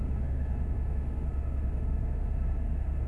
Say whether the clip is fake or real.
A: fake